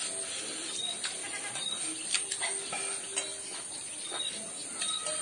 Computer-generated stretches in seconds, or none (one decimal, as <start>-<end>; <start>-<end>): none